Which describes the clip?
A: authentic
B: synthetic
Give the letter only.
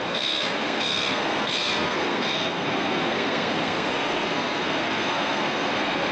B